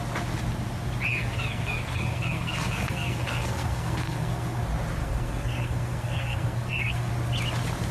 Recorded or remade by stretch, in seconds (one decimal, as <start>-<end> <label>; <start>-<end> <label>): 0.0-1.1 recorded; 1.1-4.6 remade; 4.6-5.0 recorded; 5.0-7.1 remade; 7.1-7.9 recorded

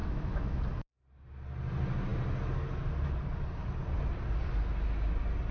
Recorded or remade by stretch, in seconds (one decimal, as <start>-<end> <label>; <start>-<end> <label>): 0.0-0.6 remade; 0.6-5.5 recorded

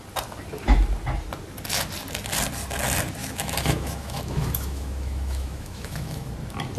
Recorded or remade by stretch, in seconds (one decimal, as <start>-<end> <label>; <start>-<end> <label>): 0.0-3.2 recorded; 3.2-6.3 remade; 6.3-6.8 recorded

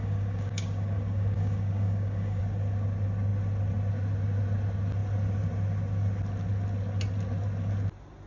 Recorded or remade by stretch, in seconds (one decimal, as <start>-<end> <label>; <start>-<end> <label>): 0.0-2.4 remade; 2.4-8.3 recorded